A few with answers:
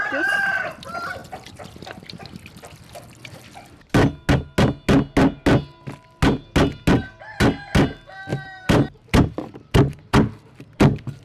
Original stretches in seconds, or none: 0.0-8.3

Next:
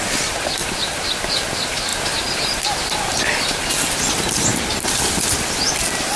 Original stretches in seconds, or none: 0.0-0.6; 1.3-1.9; 2.6-4.5; 5.7-6.2

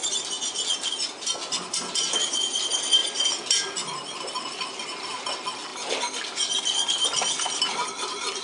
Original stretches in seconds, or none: 0.0-3.0; 5.3-8.4

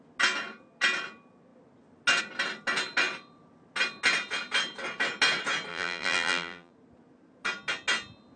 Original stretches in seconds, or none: 0.0-5.7; 6.7-8.4

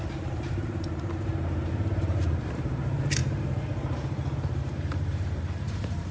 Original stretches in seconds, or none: none

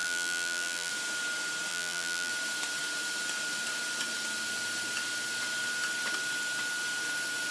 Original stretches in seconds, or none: 0.9-1.7; 2.3-7.5

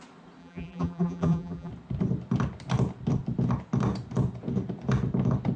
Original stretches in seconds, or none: 0.0-0.4; 1.7-5.6

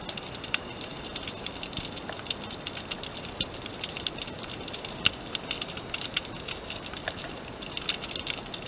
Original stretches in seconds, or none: 0.0-0.9; 1.5-8.7